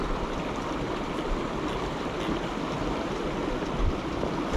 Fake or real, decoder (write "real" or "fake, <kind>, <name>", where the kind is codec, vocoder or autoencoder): real